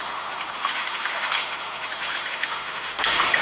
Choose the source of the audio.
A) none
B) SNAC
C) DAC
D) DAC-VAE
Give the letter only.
D